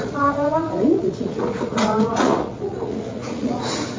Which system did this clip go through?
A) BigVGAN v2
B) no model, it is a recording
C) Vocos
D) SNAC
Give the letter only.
C